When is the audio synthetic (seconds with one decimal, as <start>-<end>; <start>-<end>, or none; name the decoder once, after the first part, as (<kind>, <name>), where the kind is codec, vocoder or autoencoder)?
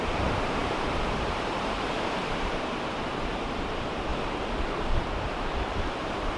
0.0-4.1 (vocoder, BigVGAN v2); 4.9-6.4